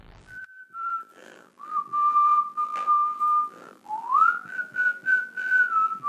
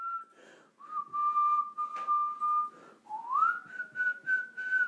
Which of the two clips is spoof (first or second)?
first